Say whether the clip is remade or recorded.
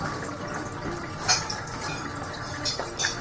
recorded